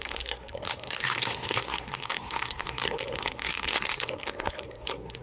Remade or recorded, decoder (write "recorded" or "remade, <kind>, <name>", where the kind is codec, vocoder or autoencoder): remade, codec, SNAC